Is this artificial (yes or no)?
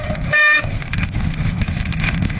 yes